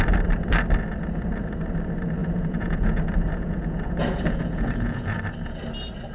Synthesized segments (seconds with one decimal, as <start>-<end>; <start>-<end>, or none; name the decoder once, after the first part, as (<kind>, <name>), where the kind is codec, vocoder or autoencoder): 2.2-5.2 (vocoder, Vocos)